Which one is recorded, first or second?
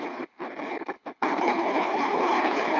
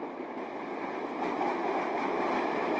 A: second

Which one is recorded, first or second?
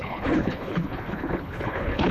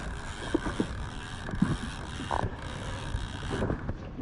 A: second